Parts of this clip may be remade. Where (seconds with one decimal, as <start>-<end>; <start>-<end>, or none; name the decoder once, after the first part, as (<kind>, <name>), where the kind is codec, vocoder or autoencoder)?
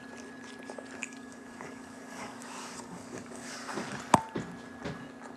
1.0-3.9 (codec, DAC)